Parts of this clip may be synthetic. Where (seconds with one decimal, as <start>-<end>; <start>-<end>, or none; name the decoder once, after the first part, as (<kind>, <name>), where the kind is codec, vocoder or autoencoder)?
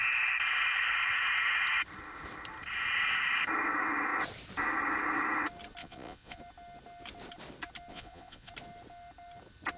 5.8-6.4 (vocoder, Vocos); 7.9-8.5